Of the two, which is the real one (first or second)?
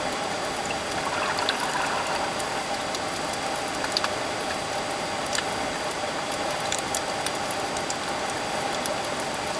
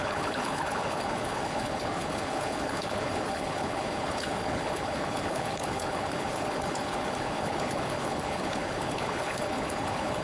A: first